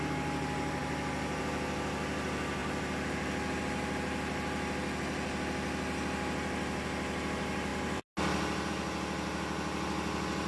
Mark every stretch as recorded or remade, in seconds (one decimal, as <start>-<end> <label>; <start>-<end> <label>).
0.0-10.5 recorded